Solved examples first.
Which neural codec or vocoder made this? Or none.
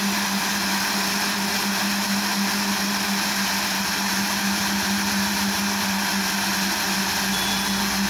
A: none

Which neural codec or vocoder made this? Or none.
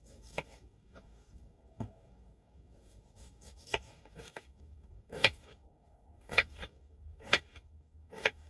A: codec, DAC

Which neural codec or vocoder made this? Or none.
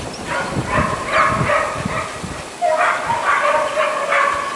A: none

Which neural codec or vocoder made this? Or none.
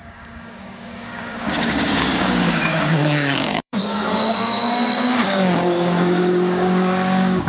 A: codec, DAC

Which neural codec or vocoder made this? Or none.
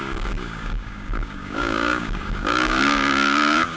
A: codec, DAC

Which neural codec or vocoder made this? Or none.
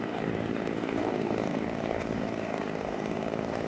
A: codec, DAC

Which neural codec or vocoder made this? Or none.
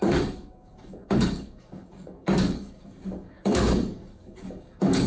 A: codec, DAC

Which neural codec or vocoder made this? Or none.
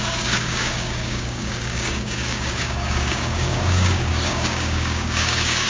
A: codec, DAC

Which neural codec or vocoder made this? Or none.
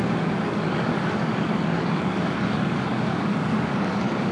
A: codec, DAC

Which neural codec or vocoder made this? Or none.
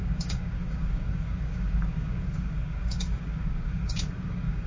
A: codec, DAC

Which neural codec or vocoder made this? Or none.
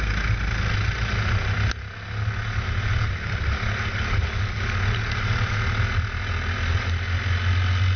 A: none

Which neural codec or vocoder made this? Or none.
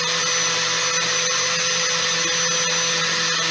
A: none